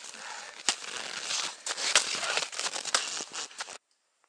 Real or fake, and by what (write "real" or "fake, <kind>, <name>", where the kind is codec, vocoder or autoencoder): real